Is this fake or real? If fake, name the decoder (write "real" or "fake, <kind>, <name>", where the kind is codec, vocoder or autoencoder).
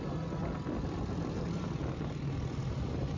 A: real